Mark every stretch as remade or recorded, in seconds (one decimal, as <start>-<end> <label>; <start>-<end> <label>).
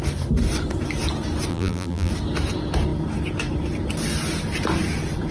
0.0-1.5 recorded; 1.5-2.1 remade; 2.1-5.3 recorded